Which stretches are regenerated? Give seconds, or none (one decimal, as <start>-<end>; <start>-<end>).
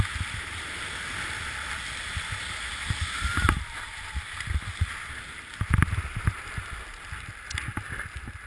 none